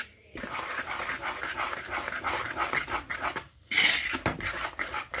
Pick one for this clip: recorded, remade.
recorded